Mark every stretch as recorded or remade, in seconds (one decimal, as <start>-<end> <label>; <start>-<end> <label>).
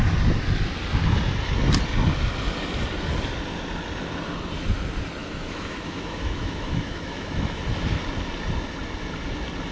0.0-5.2 recorded; 5.2-7.6 remade; 7.6-9.7 recorded